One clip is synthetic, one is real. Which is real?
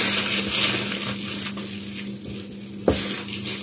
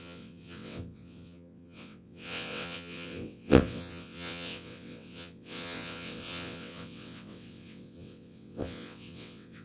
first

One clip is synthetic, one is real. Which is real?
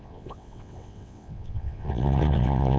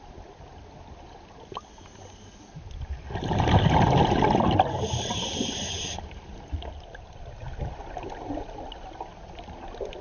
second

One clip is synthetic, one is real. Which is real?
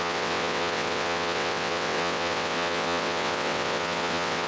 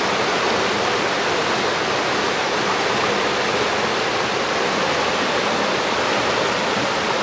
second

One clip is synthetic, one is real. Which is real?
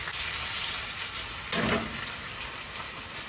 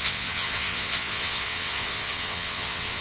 first